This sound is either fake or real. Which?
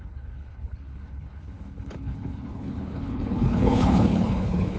fake